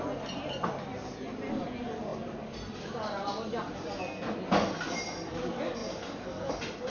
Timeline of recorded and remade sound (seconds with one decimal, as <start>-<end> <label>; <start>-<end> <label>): 0.0-6.9 recorded